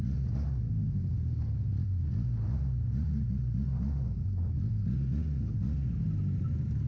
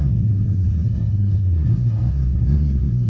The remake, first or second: second